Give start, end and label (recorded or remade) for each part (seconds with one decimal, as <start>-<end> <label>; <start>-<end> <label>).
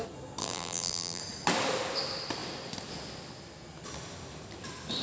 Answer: 0.0-0.4 recorded; 0.4-1.2 remade; 1.2-5.0 recorded